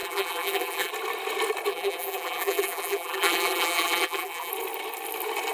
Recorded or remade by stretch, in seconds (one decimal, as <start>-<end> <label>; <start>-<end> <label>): 0.0-0.9 remade; 0.9-1.7 recorded; 1.7-4.5 remade; 4.5-5.5 recorded